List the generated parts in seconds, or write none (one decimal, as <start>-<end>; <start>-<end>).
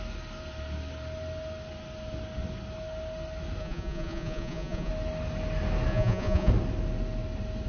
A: 3.6-4.9; 5.9-6.5